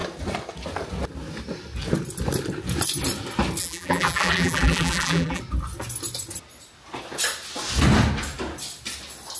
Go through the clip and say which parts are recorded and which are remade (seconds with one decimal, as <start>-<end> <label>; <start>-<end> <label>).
0.0-3.6 recorded; 3.6-5.4 remade; 5.4-9.4 recorded